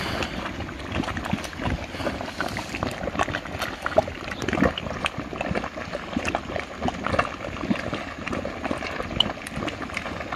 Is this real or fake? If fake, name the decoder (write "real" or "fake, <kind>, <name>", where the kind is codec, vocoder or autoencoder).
real